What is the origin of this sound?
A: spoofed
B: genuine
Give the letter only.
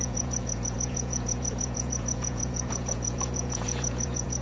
A